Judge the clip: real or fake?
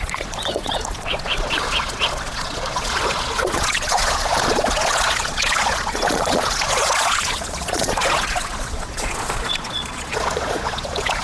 fake